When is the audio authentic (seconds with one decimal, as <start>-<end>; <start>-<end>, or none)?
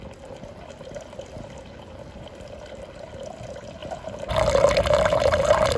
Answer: 0.0-5.8